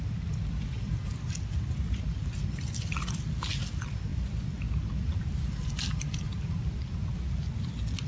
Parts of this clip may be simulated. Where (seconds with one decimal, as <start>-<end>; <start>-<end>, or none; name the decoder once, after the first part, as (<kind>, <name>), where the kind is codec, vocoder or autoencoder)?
none